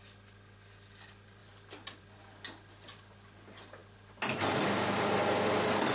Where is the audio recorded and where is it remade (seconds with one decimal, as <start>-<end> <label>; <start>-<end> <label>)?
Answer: 0.0-5.9 recorded